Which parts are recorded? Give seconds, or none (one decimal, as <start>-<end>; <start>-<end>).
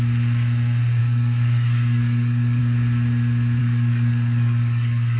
0.0-1.0; 2.6-3.6